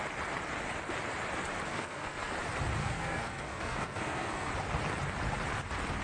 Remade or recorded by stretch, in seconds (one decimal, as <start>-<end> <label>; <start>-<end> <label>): 0.0-1.7 recorded; 1.7-2.3 remade; 2.3-2.8 recorded; 2.8-4.5 remade; 4.5-6.0 recorded